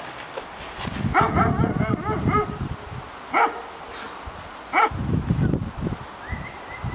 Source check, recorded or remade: recorded